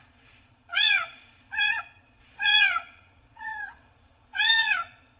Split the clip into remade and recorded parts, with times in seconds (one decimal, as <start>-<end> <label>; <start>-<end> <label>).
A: 0.0-5.2 remade